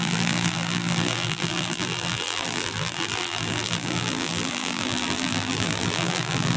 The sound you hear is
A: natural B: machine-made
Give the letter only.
B